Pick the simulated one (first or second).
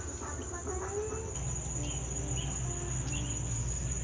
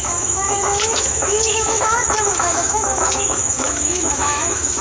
second